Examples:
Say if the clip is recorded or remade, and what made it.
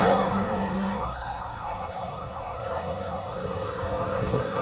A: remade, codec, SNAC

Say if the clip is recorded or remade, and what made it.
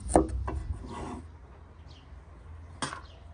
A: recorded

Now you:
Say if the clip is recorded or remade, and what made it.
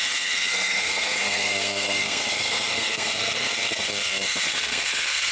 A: remade, codec, SNAC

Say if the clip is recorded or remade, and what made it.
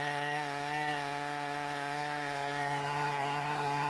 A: remade, codec, SNAC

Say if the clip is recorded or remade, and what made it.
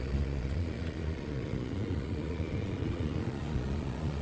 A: remade, vocoder, Vocos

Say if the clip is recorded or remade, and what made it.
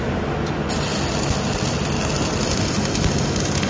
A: recorded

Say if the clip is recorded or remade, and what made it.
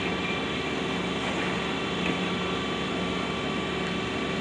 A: recorded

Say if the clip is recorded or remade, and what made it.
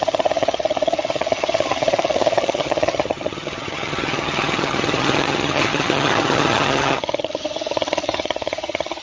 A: remade, vocoder, HiFi-GAN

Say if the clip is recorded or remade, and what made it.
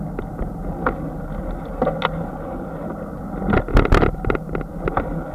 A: recorded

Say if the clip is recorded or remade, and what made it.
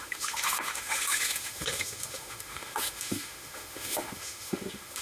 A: remade, autoencoder, DAC-VAE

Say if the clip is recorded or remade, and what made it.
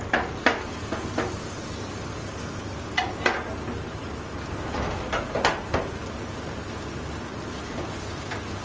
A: recorded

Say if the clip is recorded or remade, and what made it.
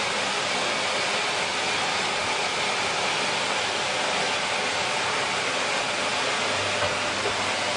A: recorded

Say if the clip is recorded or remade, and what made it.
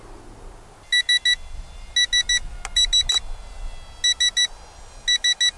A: recorded